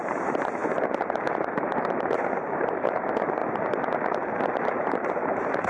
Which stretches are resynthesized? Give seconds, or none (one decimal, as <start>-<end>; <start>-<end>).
0.0-3.4; 4.6-5.7